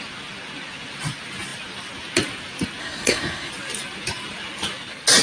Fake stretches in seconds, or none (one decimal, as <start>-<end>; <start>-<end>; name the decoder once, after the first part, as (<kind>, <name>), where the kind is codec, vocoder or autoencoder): 2.8-3.5 (codec, SNAC)